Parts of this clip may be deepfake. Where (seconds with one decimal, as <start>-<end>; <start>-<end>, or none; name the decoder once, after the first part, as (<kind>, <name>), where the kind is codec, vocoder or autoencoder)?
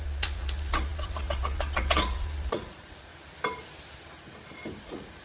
0.0-3.1 (vocoder, Vocos); 4.8-5.2